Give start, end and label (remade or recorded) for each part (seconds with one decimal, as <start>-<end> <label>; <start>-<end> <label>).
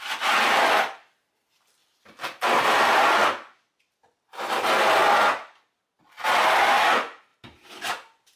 0.0-1.8 recorded; 1.8-3.9 remade; 3.9-8.4 recorded